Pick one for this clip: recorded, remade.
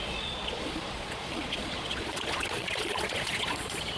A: remade